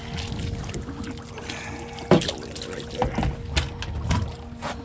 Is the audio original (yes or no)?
yes